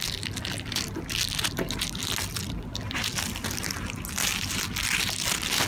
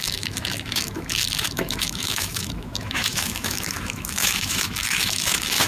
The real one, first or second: first